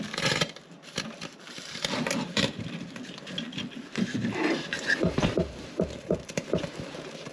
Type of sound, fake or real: fake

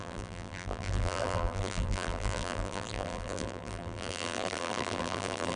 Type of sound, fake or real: fake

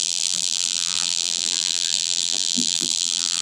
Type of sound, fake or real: fake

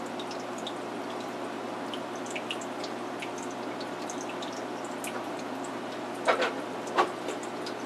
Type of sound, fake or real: real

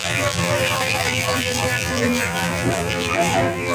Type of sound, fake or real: fake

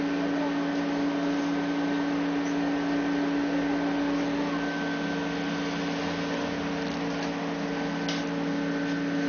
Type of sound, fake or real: real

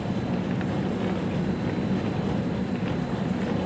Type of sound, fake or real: real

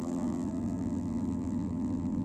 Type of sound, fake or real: fake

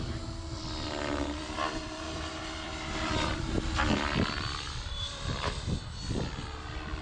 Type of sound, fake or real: fake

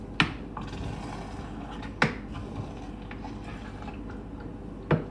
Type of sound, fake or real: real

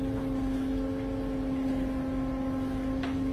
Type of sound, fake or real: real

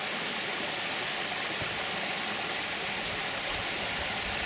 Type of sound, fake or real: real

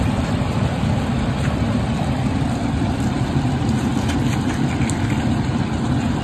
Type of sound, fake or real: fake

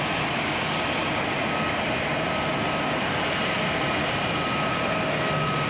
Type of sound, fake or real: real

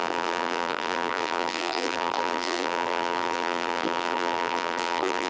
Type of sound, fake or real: fake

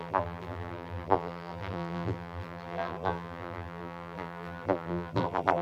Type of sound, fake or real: fake